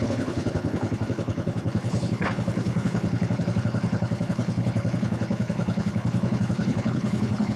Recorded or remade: remade